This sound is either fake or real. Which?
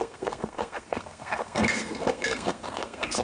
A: fake